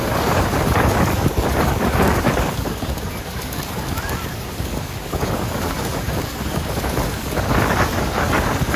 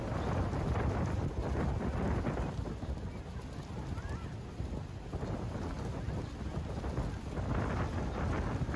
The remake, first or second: first